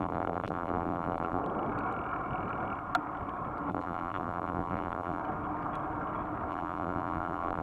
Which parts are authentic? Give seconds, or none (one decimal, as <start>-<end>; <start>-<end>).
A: 1.4-3.7; 5.2-6.5